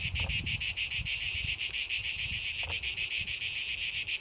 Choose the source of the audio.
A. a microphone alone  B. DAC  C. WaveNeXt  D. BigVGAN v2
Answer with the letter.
A